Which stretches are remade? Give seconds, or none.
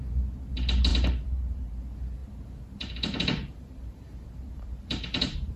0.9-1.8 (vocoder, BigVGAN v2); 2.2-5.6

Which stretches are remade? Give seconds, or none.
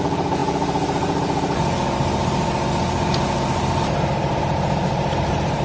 none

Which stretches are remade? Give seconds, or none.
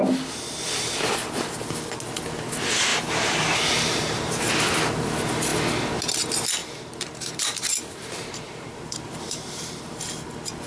2.9-4.4 (vocoder, BigVGAN v2); 6.6-10.0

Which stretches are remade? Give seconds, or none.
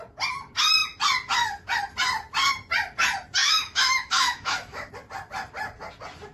3.4-4.9 (autoencoder, DAC-VAE)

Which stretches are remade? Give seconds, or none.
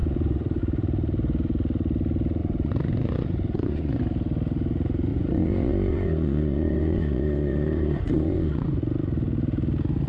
0.0-0.6 (vocoder, Vocos); 2.4-4.0; 5.1-8.8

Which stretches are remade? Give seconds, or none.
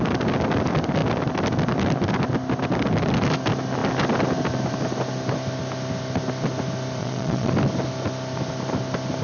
7.0-7.5 (vocoder, Vocos)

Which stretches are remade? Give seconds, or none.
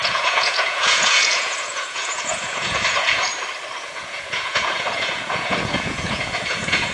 0.0-3.3 (vocoder, Vocos); 3.8-6.9